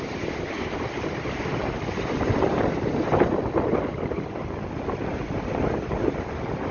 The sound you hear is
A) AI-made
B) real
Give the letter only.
B